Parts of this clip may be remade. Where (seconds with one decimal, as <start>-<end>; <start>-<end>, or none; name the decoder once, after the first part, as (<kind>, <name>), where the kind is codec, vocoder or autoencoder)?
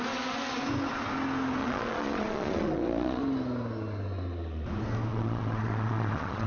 1.6-3.2 (vocoder, Vocos); 5.1-6.5